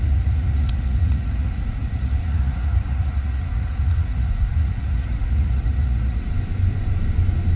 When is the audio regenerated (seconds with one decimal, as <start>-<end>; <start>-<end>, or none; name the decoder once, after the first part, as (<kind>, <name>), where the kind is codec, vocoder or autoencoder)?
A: 0.0-6.3 (vocoder, Vocos)